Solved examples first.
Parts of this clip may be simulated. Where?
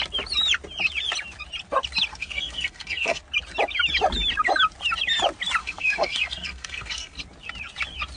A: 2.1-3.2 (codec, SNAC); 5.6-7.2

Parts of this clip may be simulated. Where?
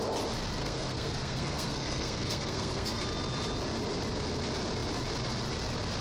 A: 0.6-3.0 (codec, SNAC)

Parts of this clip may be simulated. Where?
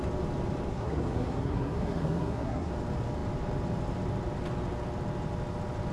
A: 0.7-2.7 (codec, SNAC)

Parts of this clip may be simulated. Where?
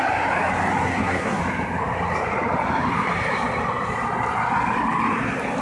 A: 0.9-1.4 (codec, SNAC)